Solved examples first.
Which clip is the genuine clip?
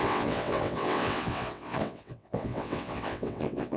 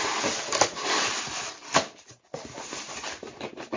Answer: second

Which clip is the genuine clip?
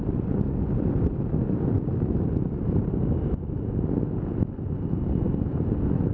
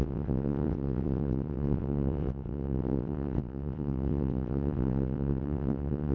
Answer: first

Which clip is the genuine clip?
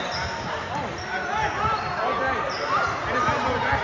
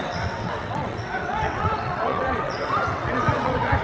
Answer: first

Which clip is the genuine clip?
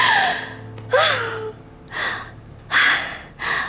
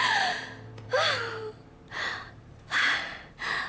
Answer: first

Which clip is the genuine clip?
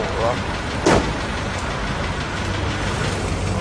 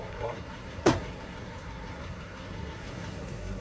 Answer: first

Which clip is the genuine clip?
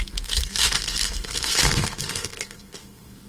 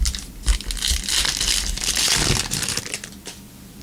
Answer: second